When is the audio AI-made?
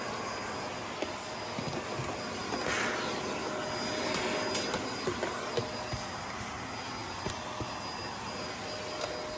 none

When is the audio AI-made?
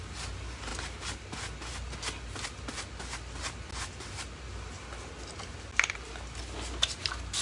none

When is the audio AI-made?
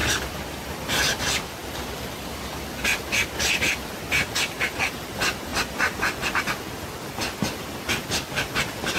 none